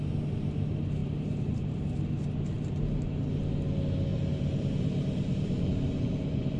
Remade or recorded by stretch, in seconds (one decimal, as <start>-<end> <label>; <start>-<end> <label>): 0.0-1.0 recorded; 1.0-2.0 remade; 2.0-4.1 recorded; 4.1-6.1 remade; 6.1-6.6 recorded